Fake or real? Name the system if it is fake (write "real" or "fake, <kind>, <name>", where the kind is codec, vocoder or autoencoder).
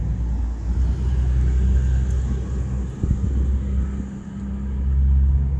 real